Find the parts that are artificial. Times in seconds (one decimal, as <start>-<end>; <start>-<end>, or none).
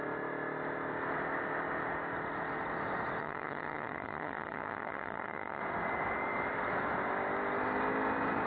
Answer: 3.2-5.6